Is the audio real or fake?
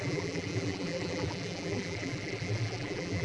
fake